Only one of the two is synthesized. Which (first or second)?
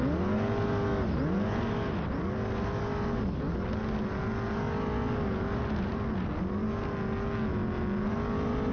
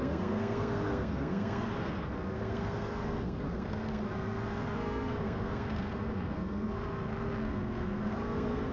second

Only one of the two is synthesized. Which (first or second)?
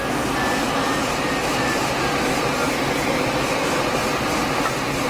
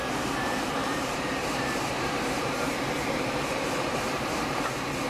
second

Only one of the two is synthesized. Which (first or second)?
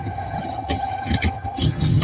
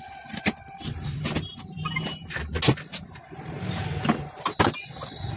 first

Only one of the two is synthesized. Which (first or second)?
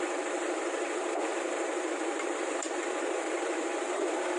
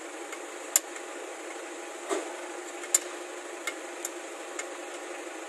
first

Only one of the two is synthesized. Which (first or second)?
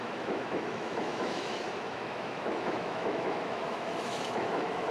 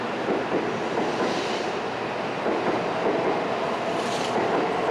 first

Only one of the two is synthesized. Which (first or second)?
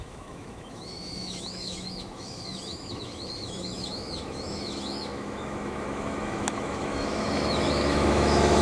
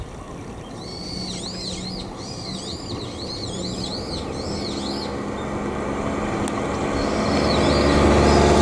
first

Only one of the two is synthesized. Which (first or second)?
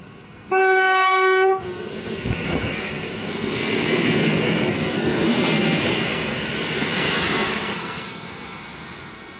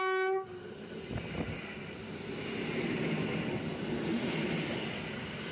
first